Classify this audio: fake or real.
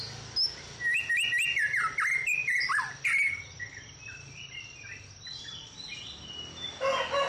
real